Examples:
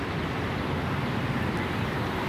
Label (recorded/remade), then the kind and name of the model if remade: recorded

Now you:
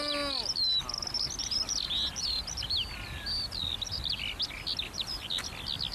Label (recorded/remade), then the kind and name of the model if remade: recorded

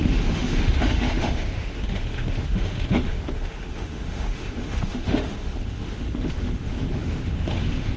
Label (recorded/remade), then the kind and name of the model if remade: remade, autoencoder, DAC-VAE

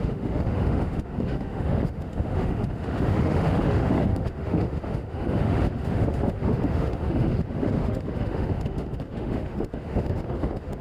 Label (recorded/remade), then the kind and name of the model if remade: remade, autoencoder, DAC-VAE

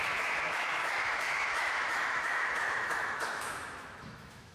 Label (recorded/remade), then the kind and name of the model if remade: remade, autoencoder, DAC-VAE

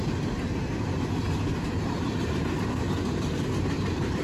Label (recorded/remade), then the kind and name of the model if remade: recorded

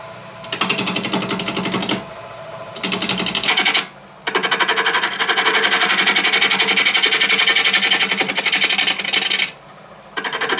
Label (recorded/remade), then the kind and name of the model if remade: recorded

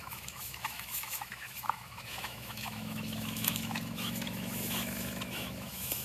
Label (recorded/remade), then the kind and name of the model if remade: remade, autoencoder, DAC-VAE